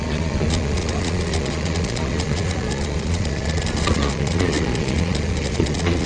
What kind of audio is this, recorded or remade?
remade